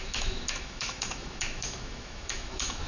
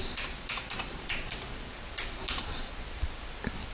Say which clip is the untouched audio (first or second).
second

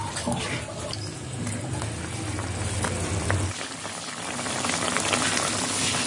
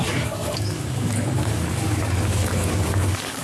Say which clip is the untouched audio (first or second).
first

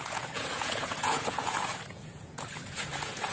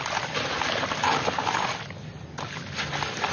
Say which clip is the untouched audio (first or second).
second